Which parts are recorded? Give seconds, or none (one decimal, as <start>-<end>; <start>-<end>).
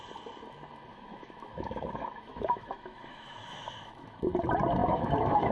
0.0-0.9; 4.2-4.8